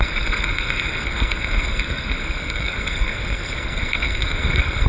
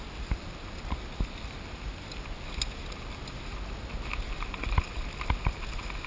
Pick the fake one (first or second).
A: first